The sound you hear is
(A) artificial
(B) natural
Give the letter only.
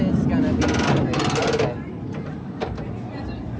B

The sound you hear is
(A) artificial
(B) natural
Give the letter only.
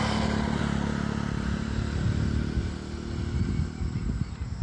B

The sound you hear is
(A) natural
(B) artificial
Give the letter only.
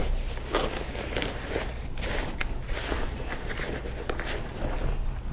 A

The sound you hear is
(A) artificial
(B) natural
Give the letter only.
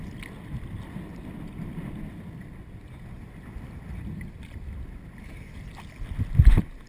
B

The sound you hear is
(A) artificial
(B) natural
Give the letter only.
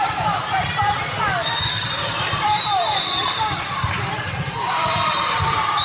A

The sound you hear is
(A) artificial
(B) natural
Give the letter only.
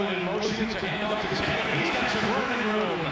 A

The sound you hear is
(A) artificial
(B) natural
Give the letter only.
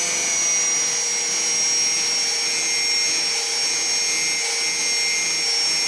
B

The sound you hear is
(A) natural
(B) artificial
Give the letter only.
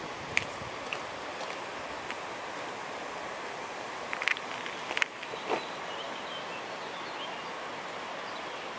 A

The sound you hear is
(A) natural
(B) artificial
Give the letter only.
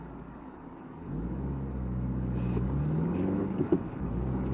B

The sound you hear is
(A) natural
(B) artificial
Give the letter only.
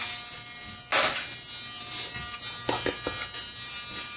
A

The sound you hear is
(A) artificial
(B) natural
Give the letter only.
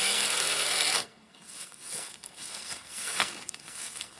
A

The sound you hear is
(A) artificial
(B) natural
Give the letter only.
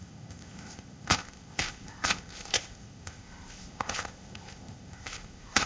A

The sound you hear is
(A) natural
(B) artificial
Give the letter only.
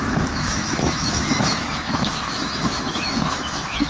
B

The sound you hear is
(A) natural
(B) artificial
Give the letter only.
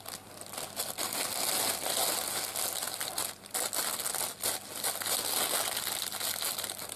A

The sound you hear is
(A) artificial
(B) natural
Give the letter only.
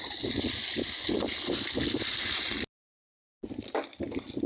B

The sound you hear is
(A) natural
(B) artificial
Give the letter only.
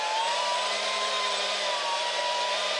B